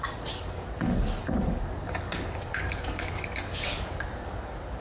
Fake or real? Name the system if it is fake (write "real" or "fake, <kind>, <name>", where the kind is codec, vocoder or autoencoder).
fake, codec, DAC